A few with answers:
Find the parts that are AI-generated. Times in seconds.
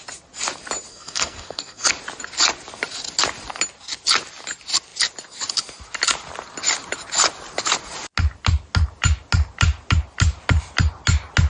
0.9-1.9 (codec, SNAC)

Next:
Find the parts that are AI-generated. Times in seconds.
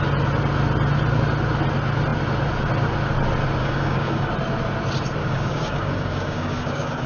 3.6-4.3 (codec, DAC); 5.2-7.1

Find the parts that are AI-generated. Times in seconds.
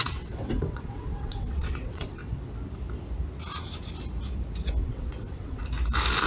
0.0-2.2 (vocoder, WaveNeXt); 4.8-5.6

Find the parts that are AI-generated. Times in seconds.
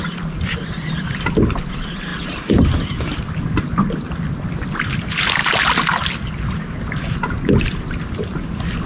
none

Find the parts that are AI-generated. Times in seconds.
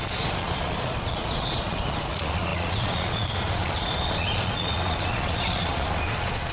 0.0-6.5 (vocoder, Vocos)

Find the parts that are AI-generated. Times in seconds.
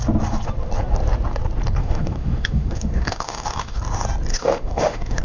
1.8-3.8 (autoencoder, DAC-VAE); 4.3-5.2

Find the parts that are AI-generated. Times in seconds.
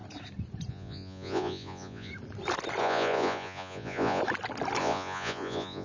0.7-2.1 (vocoder, Vocos); 2.8-4.2; 4.8-5.8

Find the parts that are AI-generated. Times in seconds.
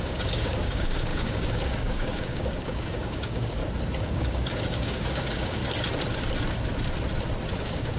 0.0-3.6 (codec, DAC); 4.1-5.6; 7.6-8.0